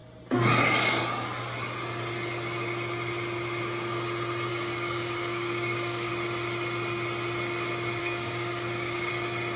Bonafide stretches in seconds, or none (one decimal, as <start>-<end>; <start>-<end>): 0.0-4.5; 6.1-8.0; 9.1-9.6